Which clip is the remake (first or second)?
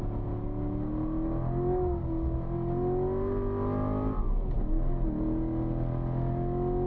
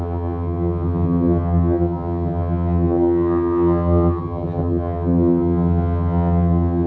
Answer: second